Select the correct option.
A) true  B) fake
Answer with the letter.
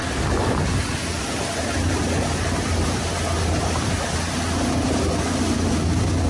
A